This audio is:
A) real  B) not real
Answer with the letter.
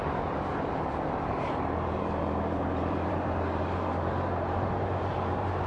B